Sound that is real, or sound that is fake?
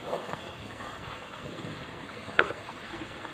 fake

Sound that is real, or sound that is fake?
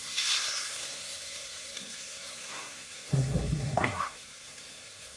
fake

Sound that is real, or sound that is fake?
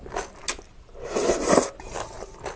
real